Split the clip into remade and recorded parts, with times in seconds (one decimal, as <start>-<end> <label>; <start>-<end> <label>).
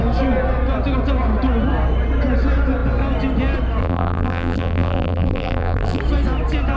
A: 0.0-3.8 recorded; 3.8-6.0 remade; 6.0-6.8 recorded